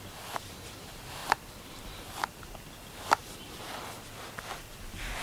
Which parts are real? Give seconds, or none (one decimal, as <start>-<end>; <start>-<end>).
0.0-1.2; 2.1-3.2; 4.2-5.2